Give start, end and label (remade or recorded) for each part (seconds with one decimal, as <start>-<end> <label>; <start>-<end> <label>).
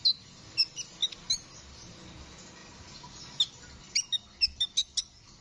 0.0-5.4 recorded